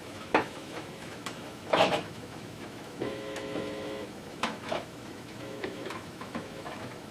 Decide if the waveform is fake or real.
fake